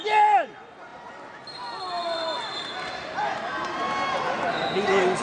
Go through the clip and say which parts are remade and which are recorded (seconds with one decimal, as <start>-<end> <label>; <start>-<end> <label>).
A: 0.0-5.2 recorded